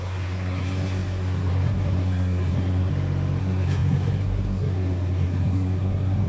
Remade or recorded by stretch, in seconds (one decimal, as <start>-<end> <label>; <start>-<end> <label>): 0.0-2.9 remade; 2.9-3.4 recorded; 3.4-6.3 remade